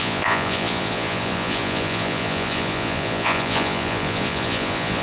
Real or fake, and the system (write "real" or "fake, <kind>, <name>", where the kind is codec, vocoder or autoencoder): fake, vocoder, Vocos